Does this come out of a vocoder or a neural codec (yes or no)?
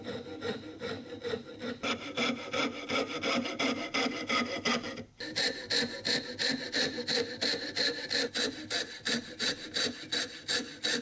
no